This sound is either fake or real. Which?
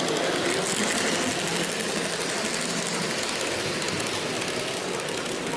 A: real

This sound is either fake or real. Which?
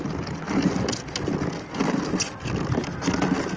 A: real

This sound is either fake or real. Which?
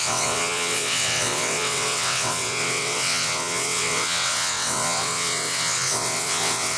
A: fake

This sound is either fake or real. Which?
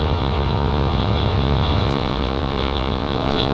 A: fake